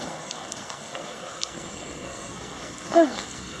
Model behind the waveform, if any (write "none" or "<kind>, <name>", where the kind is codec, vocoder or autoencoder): codec, SNAC